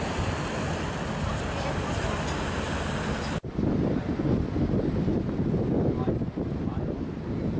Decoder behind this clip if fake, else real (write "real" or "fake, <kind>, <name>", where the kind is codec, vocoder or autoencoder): real